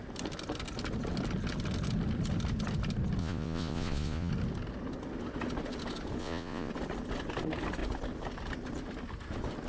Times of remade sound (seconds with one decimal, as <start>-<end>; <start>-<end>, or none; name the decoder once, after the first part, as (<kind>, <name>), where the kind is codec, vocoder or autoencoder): 3.2-4.3 (vocoder, Vocos); 6.2-6.7